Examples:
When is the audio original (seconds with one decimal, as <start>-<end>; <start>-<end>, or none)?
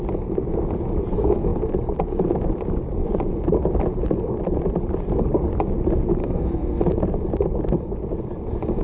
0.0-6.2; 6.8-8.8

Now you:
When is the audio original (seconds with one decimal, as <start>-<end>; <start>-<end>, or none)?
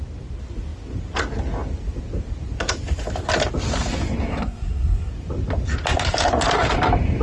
0.0-4.3; 5.1-7.2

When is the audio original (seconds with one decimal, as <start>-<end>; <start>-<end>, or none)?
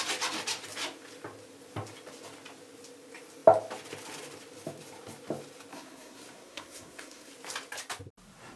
0.0-5.7; 7.3-8.6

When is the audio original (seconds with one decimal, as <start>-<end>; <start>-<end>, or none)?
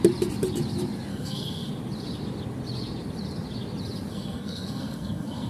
0.0-1.1; 1.7-4.1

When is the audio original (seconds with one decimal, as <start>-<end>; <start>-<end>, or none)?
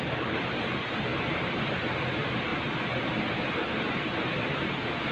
0.0-5.1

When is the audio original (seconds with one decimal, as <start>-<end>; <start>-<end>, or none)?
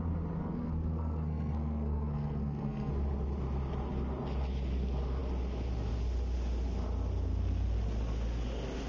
0.0-0.4; 2.9-8.9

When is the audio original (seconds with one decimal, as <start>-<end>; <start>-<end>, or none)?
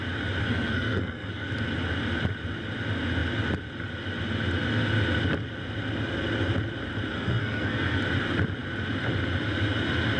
0.0-0.4; 1.5-7.1; 8.0-10.2